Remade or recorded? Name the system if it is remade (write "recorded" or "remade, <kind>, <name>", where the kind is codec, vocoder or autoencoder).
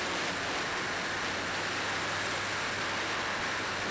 recorded